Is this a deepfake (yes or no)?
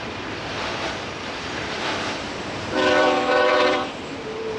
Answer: yes